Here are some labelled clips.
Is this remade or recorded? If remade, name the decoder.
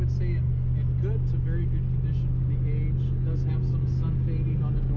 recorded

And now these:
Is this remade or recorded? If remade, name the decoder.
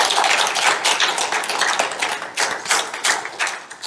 recorded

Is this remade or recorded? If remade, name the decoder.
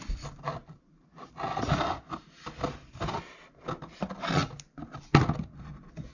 recorded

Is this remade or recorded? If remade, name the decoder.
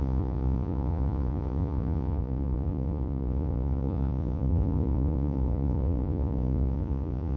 remade, vocoder, Vocos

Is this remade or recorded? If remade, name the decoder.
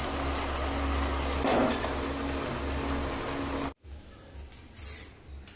recorded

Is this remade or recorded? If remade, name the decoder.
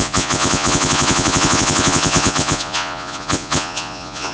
remade, vocoder, Vocos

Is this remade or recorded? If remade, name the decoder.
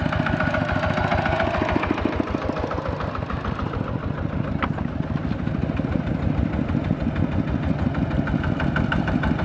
recorded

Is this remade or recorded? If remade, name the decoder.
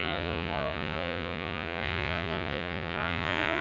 remade, vocoder, Vocos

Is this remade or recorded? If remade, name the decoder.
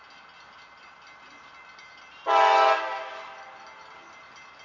recorded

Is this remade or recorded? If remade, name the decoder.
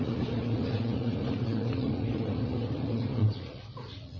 remade, vocoder, Vocos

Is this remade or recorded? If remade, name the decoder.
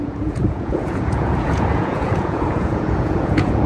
remade, vocoder, Vocos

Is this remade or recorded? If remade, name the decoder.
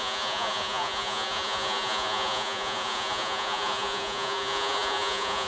remade, vocoder, Vocos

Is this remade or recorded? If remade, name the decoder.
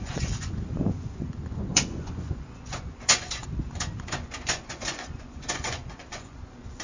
remade, vocoder, Vocos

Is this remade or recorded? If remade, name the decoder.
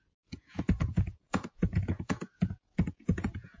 remade, vocoder, Vocos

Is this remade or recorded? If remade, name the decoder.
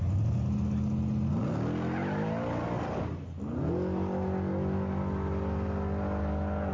recorded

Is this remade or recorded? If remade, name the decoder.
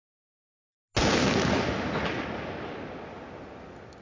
recorded